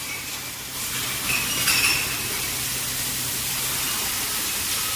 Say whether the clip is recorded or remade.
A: recorded